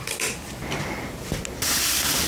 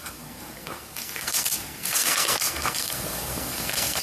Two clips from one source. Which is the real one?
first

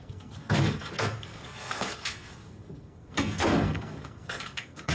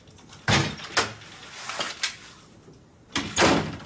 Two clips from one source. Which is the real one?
second